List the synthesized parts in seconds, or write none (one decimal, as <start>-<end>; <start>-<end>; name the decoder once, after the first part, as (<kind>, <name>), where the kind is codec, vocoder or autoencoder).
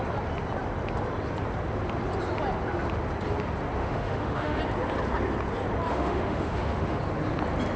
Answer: 3.8-4.6 (autoencoder, DAC-VAE); 5.9-7.0